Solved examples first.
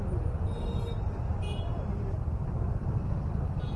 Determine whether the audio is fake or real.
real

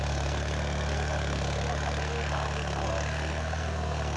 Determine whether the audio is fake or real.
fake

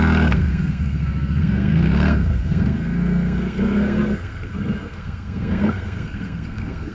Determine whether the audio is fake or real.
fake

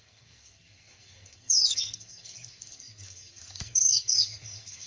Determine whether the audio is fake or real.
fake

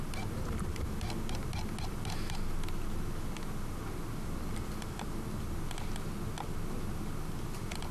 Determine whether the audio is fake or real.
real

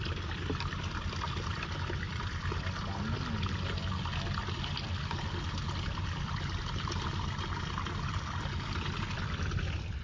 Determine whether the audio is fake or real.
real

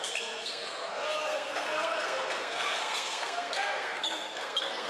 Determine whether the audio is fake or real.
fake